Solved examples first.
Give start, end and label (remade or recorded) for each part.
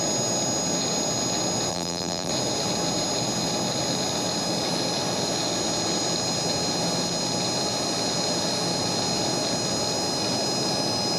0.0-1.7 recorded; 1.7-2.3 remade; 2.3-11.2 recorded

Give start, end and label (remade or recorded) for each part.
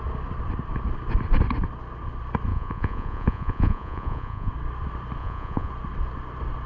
0.0-2.5 recorded; 2.5-4.5 remade; 4.5-5.2 recorded; 5.2-5.7 remade; 5.7-6.7 recorded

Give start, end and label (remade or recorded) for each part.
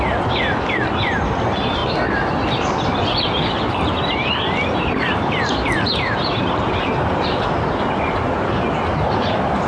0.0-9.7 recorded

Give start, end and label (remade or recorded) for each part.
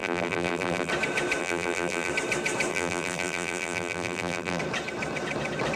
0.0-0.9 remade; 0.9-1.4 recorded; 1.4-2.1 remade; 2.1-2.7 recorded; 2.7-4.6 remade; 4.6-5.8 recorded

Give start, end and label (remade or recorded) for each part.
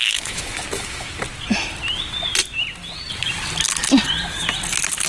0.0-1.2 remade; 1.2-5.1 recorded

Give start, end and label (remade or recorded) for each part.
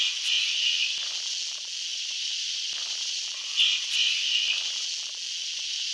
0.0-1.9 recorded; 1.9-3.6 remade; 3.6-5.9 recorded